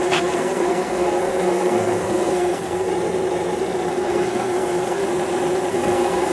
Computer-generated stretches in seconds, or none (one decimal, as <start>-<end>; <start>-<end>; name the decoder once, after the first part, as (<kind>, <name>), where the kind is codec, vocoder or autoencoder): 0.0-2.9 (codec, SNAC); 3.9-5.0; 5.7-6.3